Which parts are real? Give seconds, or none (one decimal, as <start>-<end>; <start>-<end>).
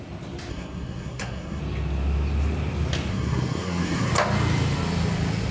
0.0-0.5; 1.6-3.1; 4.1-5.5